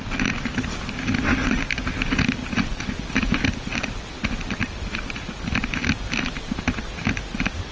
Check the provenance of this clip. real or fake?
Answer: real